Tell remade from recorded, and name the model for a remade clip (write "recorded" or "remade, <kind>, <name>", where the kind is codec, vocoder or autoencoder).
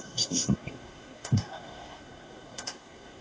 remade, codec, SNAC